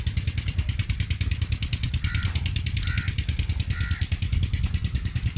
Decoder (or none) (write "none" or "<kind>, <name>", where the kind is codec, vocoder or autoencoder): none